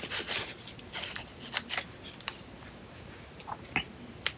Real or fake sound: real